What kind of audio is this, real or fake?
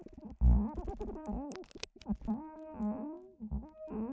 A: real